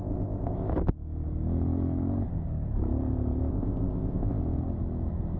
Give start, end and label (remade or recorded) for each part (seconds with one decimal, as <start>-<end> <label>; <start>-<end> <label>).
0.0-0.7 remade; 0.7-3.5 recorded; 3.5-4.4 remade; 4.4-5.4 recorded

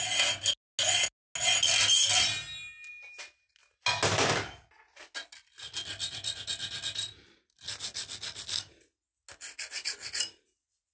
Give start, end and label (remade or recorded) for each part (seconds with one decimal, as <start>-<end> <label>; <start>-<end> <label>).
0.0-10.9 recorded

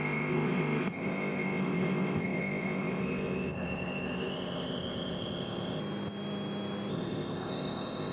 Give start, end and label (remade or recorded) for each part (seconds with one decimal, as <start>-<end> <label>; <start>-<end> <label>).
0.0-5.8 remade; 5.8-6.9 recorded; 6.9-8.1 remade

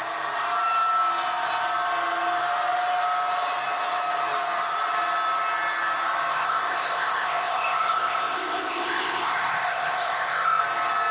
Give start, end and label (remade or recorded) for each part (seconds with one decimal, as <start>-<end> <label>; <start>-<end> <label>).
0.0-6.3 recorded; 6.3-10.6 remade; 10.6-11.1 recorded

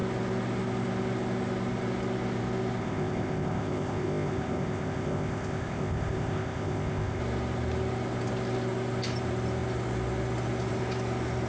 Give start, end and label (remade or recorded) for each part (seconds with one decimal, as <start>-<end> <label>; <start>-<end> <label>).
0.0-2.8 recorded; 2.8-7.2 remade; 7.2-11.5 recorded

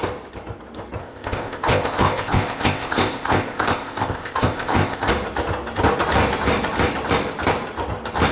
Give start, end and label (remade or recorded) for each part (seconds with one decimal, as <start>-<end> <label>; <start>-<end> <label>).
0.0-1.0 recorded; 1.0-5.1 remade; 5.1-8.3 recorded

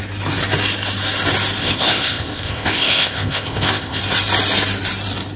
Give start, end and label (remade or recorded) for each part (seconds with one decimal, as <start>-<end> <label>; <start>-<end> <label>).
0.0-1.6 recorded; 1.6-4.0 remade; 4.0-5.4 recorded